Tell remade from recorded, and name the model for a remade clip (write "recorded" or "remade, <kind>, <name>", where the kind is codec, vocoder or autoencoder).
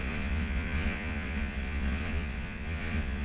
remade, vocoder, Vocos